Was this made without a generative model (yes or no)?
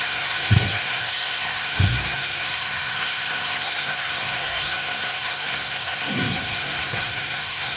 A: no